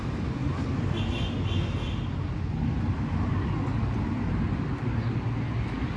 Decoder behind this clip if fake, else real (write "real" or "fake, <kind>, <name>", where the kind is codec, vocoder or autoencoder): real